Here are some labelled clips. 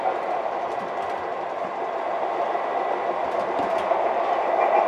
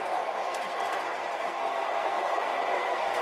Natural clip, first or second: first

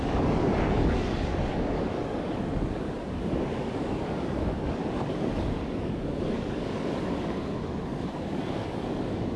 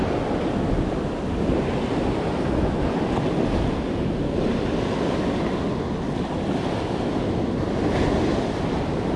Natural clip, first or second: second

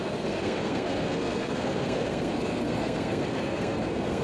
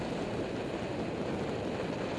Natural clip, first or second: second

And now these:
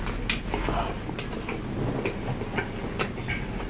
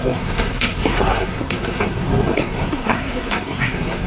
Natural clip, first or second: first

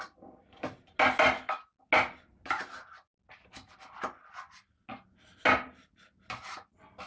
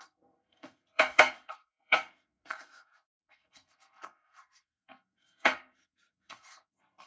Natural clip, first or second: first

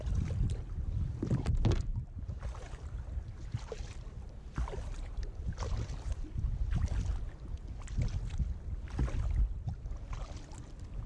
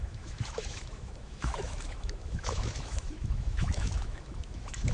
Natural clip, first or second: first